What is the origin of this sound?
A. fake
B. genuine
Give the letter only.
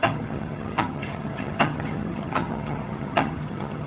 A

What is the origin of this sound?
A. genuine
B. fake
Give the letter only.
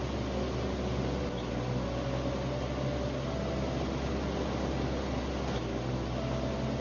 A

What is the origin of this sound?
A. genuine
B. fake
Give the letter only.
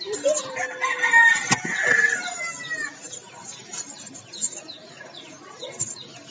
A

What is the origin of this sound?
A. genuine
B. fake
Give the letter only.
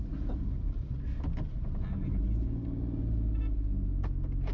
A